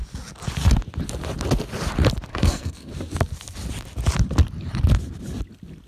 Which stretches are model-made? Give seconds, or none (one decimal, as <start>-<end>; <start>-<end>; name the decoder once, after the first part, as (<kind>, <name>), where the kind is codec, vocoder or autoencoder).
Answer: 2.3-2.9 (codec, SNAC)